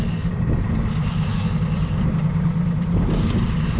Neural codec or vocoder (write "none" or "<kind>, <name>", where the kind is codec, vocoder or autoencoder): none